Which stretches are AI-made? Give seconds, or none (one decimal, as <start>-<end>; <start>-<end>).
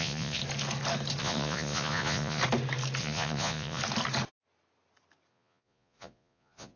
0.0-0.4; 1.2-2.4; 3.0-3.8; 5.3-6.8